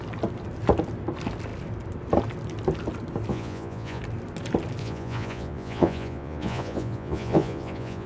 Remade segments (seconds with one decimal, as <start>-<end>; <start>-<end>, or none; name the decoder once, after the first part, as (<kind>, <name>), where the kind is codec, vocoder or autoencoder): 3.3-4.0 (vocoder, Vocos); 4.8-8.1